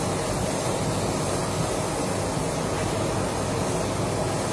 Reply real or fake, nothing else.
real